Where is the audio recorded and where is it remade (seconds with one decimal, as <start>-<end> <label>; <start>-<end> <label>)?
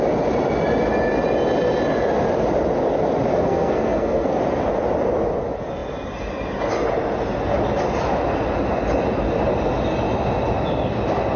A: 0.0-3.3 recorded; 3.3-4.4 remade; 4.4-11.4 recorded